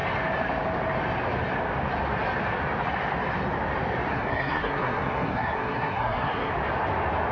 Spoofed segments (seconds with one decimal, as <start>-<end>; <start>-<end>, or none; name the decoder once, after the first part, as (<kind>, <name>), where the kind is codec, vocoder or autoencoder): 4.1-6.5 (codec, SNAC)